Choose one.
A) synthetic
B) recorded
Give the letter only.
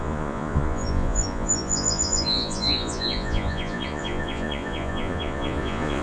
A